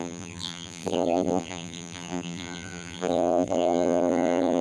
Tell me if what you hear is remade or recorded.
remade